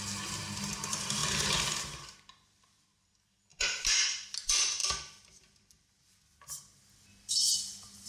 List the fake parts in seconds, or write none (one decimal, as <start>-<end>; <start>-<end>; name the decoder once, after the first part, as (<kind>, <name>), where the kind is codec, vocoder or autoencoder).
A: 4.8-6.0 (vocoder, BigVGAN v2)